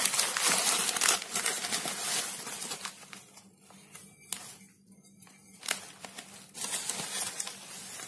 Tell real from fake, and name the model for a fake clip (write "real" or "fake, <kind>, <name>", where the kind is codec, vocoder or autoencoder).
real